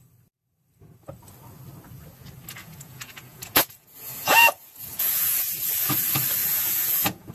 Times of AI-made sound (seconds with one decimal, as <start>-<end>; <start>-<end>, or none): 2.6-5.5; 6.4-7.3